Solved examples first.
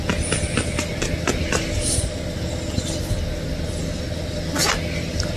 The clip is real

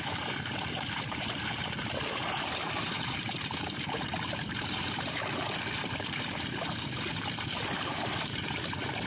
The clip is fake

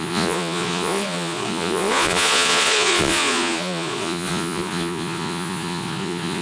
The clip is fake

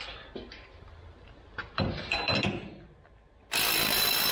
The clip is real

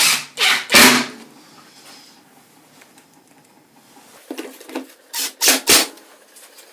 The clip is real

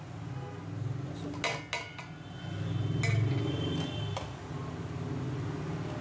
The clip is real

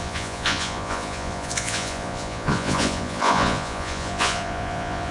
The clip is fake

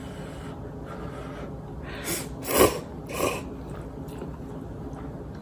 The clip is real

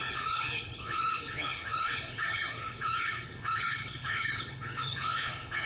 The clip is fake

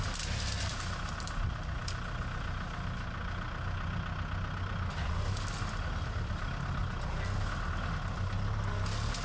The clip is real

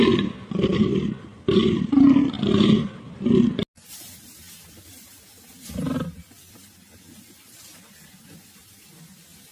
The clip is real